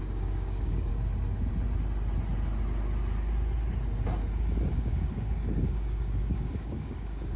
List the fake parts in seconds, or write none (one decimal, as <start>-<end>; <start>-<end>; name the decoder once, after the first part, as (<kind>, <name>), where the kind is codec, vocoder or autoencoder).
0.0-0.9 (codec, DAC); 4.7-7.4